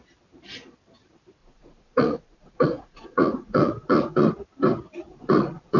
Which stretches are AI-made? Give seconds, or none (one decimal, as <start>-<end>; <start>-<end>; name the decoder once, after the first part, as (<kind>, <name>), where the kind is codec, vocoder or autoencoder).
1.4-4.3 (vocoder, Vocos); 5.1-5.8